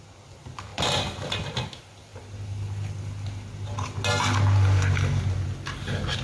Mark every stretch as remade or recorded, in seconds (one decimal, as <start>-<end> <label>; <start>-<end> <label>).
0.0-6.2 recorded